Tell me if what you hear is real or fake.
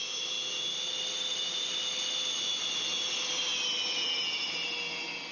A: real